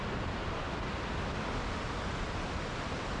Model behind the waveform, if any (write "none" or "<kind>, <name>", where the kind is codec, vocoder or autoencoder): none